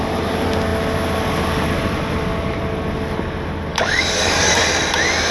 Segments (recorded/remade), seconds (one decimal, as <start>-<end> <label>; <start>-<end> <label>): 0.0-3.7 recorded; 3.7-4.6 remade; 4.6-5.3 recorded